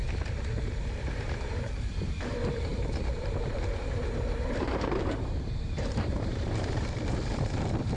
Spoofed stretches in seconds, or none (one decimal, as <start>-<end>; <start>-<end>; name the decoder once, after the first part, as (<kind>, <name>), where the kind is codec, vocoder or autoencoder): 1.0-8.0 (vocoder, BigVGAN v2)